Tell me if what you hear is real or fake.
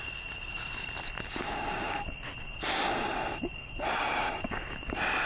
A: real